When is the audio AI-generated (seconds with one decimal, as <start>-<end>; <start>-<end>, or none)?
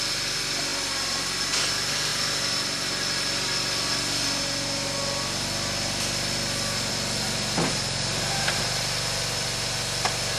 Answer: none